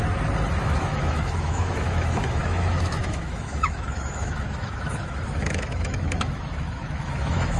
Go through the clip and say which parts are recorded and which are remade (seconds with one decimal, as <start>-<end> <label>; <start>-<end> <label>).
0.0-0.6 recorded; 0.6-7.6 remade